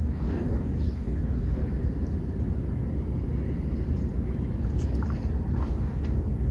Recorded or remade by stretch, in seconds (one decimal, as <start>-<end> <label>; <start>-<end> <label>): 0.0-1.6 remade; 1.6-5.5 recorded; 5.5-6.5 remade